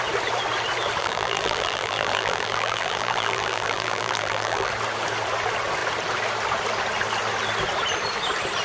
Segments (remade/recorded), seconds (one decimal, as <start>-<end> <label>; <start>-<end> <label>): 0.0-1.0 recorded; 1.0-4.7 remade; 4.7-8.6 recorded